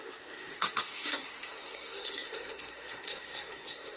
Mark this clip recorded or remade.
remade